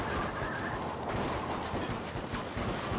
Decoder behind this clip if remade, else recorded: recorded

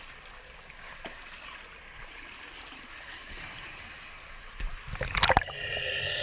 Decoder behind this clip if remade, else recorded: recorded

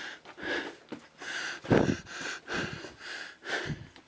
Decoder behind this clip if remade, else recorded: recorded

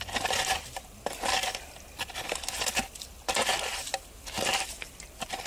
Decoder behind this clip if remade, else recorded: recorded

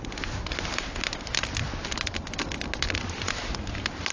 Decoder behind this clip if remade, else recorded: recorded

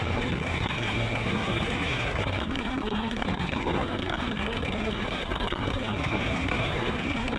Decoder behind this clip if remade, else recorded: remade, codec, SNAC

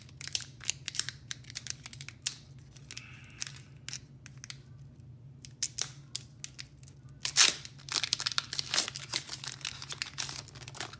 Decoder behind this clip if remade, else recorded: recorded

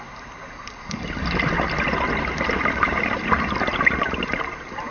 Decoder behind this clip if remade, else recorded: recorded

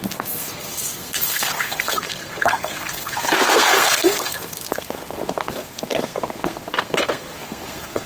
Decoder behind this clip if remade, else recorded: remade, codec, SNAC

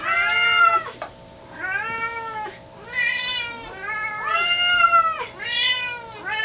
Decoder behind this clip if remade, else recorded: recorded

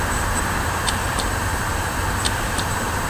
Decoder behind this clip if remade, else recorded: remade, vocoder, BigVGAN v2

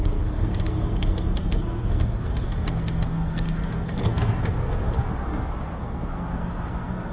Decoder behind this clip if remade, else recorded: remade, codec, SNAC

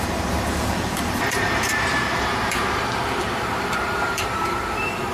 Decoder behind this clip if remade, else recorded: remade, vocoder, BigVGAN v2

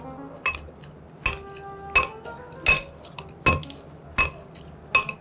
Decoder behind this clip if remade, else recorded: recorded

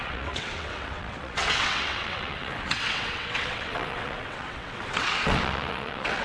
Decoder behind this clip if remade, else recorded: remade, vocoder, WaveNeXt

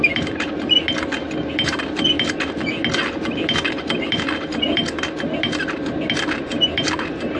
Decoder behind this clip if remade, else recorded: recorded